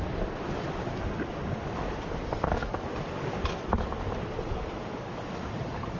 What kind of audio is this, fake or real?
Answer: real